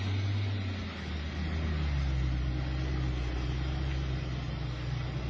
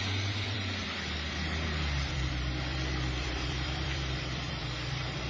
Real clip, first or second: first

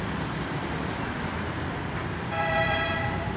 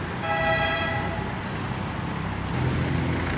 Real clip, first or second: second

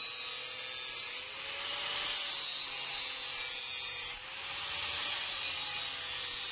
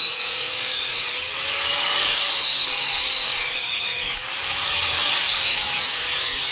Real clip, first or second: first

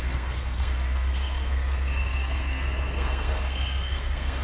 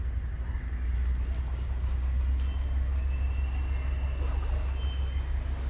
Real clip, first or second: second